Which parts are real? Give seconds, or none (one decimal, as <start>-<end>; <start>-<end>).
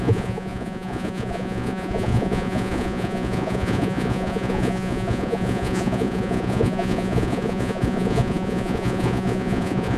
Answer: none